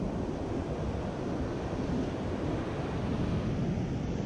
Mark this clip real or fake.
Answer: real